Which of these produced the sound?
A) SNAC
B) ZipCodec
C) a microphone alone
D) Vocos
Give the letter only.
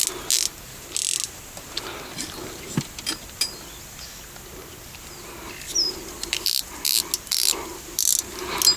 C